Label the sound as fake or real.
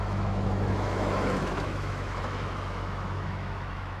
fake